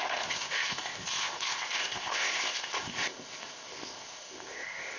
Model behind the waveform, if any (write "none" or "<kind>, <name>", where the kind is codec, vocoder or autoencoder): codec, ZipCodec